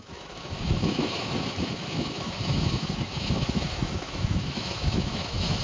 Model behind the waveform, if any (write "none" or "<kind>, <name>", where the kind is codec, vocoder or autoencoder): autoencoder, DAC-VAE